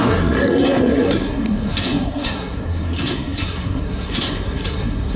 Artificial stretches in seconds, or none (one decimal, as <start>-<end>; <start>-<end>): 0.0-5.2